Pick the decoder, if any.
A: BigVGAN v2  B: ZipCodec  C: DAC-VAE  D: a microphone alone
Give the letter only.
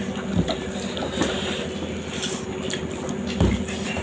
D